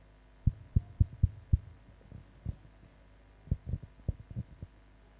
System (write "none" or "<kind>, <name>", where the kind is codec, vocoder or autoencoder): none